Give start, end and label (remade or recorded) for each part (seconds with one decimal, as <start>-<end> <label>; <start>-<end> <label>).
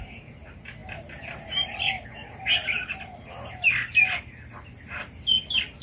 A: 0.0-2.6 recorded; 2.6-5.8 remade